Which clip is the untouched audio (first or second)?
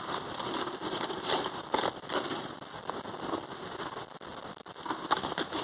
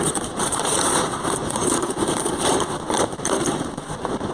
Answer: first